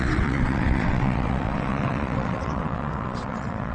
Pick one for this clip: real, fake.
fake